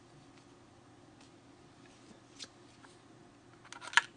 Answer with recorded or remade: recorded